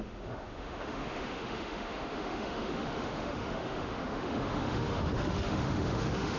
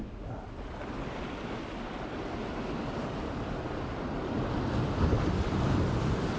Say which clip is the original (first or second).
second